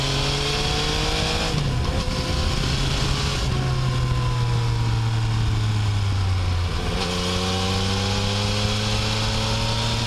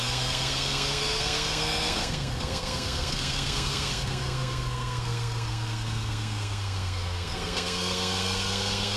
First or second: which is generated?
second